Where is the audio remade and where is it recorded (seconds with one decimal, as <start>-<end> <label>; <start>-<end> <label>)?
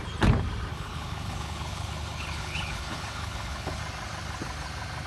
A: 0.0-0.7 recorded; 0.7-3.8 remade; 3.8-5.1 recorded